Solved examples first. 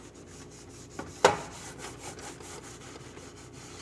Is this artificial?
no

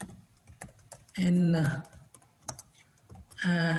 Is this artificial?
yes